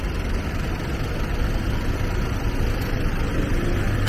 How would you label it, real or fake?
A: fake